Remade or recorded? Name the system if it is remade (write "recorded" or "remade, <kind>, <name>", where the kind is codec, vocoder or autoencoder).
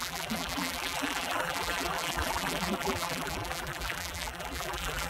remade, vocoder, BigVGAN v2